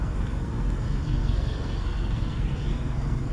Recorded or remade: remade